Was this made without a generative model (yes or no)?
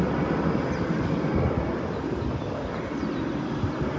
yes